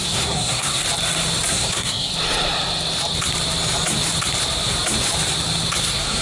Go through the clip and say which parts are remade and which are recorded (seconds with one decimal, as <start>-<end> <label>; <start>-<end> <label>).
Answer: 0.0-0.8 remade; 0.8-1.5 recorded; 1.5-2.1 remade; 2.1-5.8 recorded; 5.8-6.2 remade